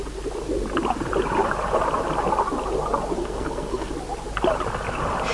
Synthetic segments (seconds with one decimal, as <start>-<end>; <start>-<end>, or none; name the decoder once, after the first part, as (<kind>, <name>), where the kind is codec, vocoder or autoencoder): 3.2-3.9 (codec, SNAC)